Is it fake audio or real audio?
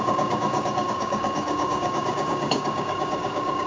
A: fake